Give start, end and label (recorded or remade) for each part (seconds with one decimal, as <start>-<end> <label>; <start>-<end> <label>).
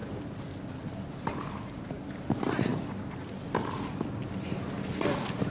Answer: 0.0-5.5 recorded